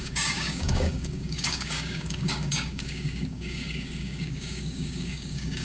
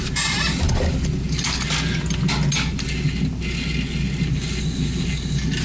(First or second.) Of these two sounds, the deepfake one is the first